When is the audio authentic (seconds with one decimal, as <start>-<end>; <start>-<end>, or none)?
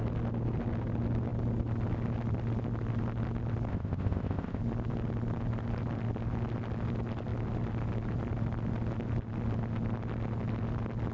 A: 0.0-3.7; 4.6-11.1